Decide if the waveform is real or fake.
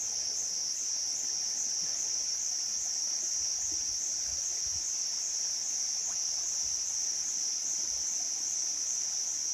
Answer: real